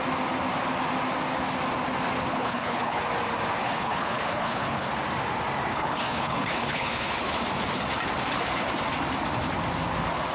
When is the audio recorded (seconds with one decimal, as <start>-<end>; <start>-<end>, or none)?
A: 0.0-2.3; 3.0-3.6; 4.9-5.7; 7.4-10.3